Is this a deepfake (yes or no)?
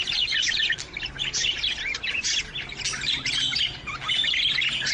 no